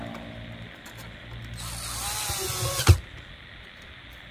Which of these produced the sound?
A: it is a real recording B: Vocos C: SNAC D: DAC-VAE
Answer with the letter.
A